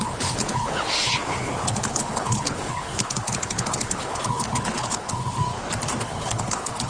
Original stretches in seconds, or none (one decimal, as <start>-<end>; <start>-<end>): 5.4-6.0